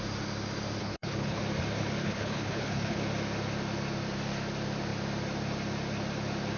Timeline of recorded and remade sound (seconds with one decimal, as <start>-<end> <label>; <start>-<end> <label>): 0.0-0.8 recorded; 0.8-1.4 remade; 1.4-2.0 recorded; 2.0-3.0 remade; 3.0-6.6 recorded